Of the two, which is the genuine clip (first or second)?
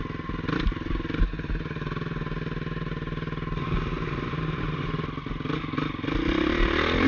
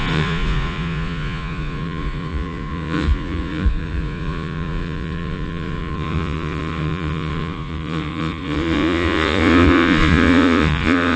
first